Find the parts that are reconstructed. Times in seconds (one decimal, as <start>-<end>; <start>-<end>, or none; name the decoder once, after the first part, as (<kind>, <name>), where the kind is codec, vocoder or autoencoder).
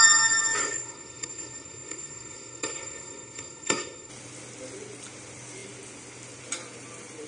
0.6-4.1 (codec, SNAC)